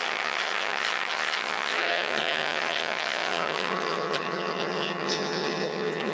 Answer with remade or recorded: remade